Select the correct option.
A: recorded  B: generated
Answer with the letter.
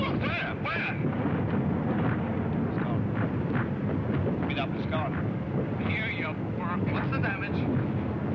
A